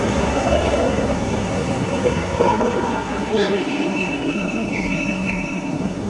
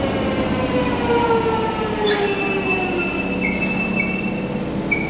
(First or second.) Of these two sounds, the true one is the second